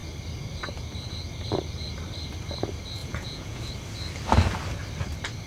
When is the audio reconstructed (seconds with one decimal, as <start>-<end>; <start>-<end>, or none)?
3.0-3.7